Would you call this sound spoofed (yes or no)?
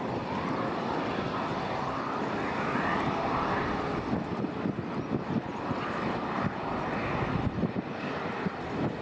no